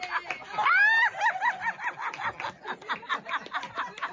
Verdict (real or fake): real